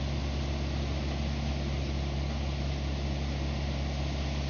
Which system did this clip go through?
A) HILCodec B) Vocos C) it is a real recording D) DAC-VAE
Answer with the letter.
C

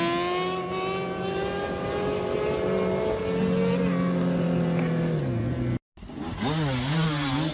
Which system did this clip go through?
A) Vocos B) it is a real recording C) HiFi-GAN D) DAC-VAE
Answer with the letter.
B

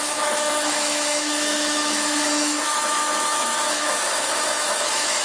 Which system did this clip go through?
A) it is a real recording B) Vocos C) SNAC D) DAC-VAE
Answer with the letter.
D